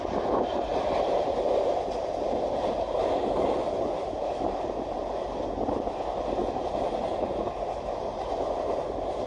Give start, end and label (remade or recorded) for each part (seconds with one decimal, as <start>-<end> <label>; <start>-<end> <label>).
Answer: 0.0-9.3 recorded